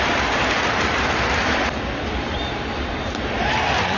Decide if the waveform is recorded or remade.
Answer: remade